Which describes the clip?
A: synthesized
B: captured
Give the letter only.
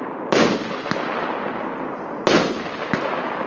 B